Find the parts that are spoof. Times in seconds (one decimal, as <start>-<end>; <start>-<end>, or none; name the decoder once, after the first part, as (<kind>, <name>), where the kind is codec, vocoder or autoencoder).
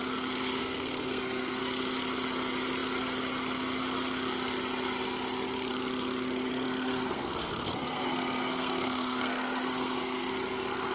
0.6-1.6 (codec, SNAC); 6.5-10.3